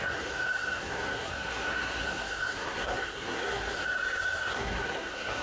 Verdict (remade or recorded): remade